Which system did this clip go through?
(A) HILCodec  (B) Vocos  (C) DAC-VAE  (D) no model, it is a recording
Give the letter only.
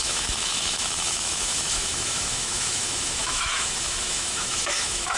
C